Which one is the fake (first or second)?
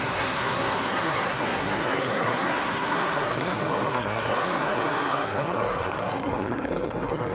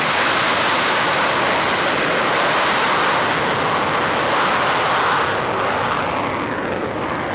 first